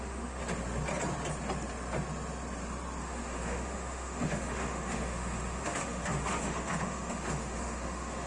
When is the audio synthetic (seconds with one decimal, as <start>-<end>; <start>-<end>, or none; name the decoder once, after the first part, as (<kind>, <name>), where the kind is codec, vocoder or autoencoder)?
0.0-0.4 (autoencoder, DAC-VAE); 3.0-8.3